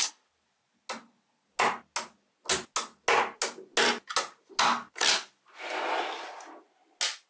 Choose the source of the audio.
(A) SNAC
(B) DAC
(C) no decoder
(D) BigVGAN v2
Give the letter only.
C